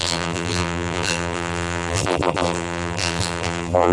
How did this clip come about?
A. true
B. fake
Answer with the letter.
B